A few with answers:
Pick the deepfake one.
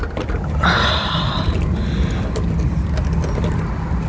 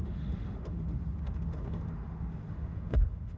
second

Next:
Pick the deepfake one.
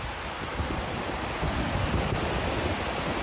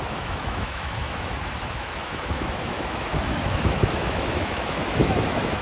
second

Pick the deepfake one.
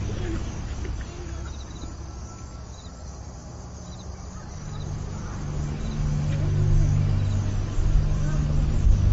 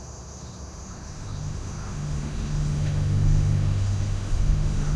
second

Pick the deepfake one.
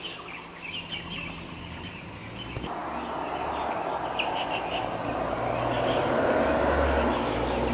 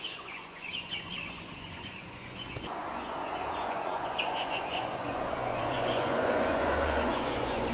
second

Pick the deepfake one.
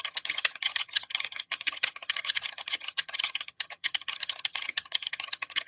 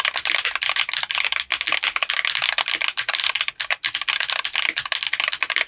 first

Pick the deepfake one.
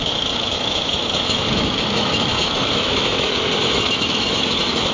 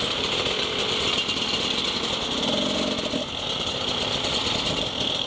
first